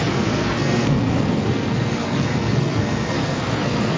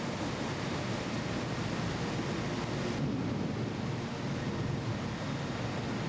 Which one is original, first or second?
second